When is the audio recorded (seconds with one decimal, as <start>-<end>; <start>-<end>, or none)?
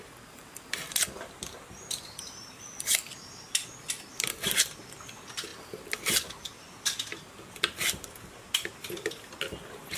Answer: 0.0-10.0